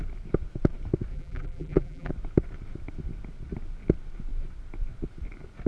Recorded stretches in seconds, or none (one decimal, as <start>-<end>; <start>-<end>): 0.0-1.1; 2.1-5.7